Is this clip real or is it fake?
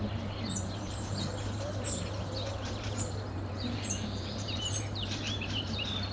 fake